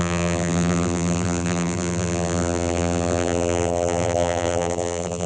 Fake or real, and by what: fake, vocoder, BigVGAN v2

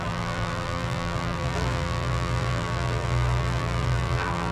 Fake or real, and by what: fake, vocoder, BigVGAN v2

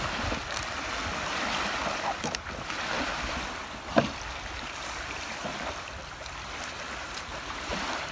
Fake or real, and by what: fake, vocoder, BigVGAN v2